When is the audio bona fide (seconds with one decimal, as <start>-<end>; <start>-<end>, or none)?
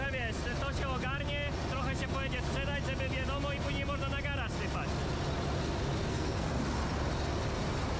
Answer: 0.0-6.0; 6.6-8.0